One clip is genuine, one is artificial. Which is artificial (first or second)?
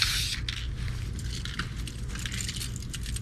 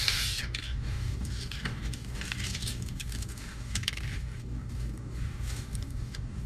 second